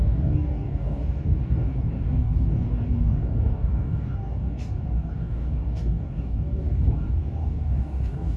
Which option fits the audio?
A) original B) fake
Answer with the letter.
B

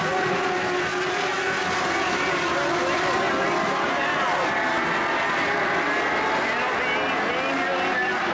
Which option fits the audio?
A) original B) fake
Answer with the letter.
A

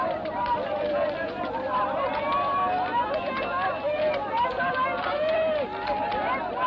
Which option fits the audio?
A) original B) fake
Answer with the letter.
A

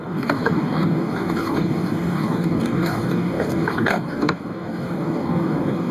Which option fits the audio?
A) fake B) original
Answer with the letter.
A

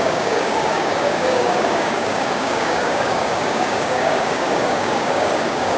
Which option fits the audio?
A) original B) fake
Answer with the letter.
B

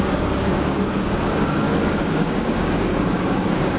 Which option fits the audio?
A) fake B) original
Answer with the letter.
A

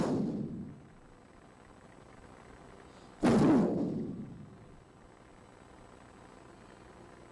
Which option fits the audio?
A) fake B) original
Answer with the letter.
B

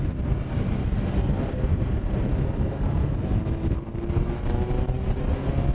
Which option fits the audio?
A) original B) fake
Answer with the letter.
A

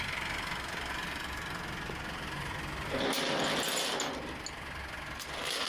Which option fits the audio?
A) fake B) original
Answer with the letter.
B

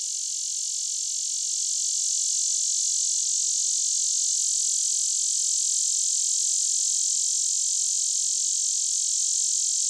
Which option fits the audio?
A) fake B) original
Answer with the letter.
B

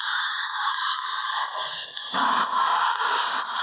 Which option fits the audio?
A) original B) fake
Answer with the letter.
B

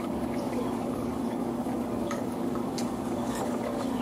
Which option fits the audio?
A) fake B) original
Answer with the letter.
A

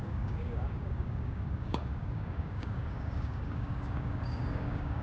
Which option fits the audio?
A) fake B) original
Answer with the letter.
A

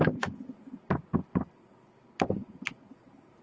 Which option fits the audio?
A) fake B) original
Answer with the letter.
B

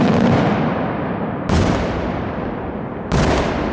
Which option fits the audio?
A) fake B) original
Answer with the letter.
B